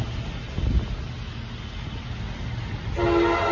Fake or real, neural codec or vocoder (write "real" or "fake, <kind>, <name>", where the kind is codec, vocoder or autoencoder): real